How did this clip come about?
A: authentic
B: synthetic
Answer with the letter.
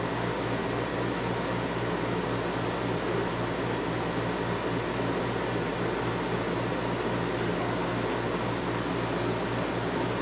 A